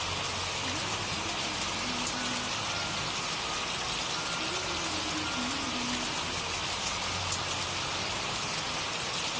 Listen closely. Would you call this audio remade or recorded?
recorded